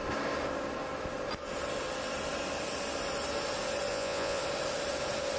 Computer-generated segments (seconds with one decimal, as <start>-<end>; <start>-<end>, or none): 3.9-4.4